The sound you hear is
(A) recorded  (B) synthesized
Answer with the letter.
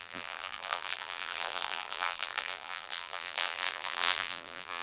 B